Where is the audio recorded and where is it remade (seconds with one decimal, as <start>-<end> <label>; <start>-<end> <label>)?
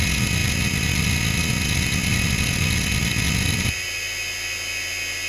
0.0-5.3 recorded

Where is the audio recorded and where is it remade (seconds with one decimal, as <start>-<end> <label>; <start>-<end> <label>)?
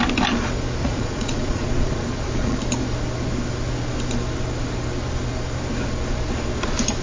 0.0-0.8 recorded; 0.8-2.6 remade; 2.6-7.0 recorded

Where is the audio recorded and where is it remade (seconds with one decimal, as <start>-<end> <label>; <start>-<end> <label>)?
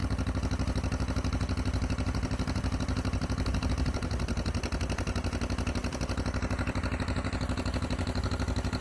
0.0-8.8 recorded